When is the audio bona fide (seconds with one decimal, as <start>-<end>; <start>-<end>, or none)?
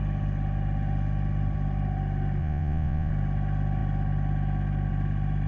0.0-2.4; 3.1-5.5